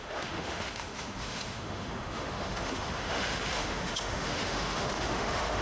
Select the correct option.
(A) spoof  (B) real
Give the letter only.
A